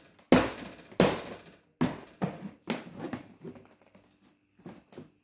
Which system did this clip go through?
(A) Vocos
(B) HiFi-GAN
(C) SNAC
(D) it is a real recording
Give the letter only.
D